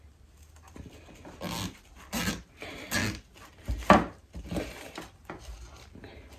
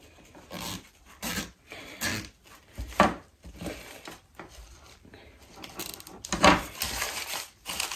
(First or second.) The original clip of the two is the first